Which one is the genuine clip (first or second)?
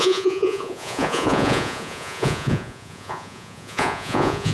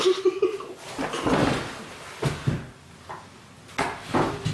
second